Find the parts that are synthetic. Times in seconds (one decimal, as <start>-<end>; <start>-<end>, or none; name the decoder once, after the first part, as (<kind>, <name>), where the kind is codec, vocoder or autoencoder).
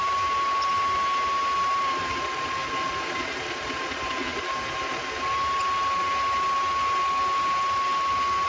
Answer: none